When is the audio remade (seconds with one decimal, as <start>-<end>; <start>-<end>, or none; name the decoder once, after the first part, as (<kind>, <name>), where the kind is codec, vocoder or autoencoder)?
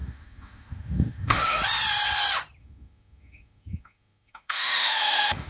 0.0-1.6 (autoencoder, DAC-VAE); 2.6-5.5